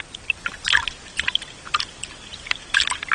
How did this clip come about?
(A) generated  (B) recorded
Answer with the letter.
B